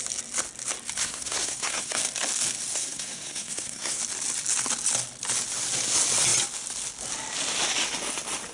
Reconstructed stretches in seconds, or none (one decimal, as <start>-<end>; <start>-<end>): 1.0-2.0; 2.7-4.0